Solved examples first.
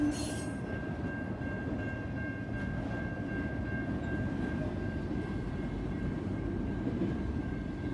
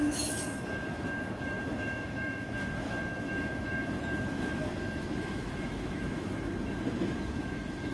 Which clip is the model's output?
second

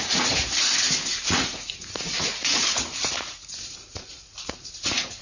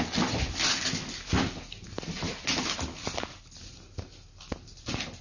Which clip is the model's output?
first